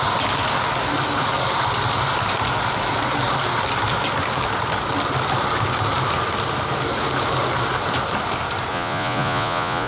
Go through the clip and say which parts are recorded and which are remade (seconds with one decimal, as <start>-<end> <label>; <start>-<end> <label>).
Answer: 0.0-8.7 recorded; 8.7-9.9 remade